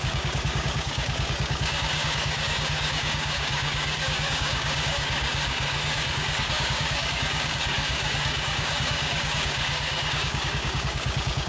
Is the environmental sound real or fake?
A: fake